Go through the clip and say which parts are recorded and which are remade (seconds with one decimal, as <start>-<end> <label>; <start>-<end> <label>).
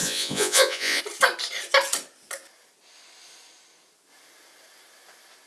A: 0.0-1.0 remade; 1.0-5.5 recorded